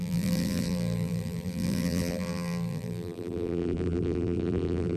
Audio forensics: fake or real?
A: fake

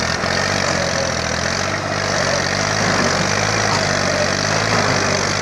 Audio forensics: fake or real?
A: real